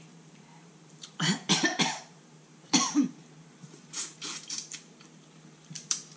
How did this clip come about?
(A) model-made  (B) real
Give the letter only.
A